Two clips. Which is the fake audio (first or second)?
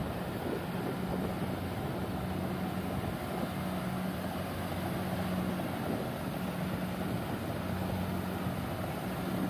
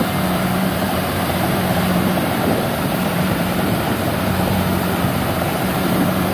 second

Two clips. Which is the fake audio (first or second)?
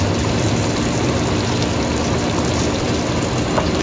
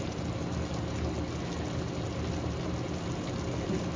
first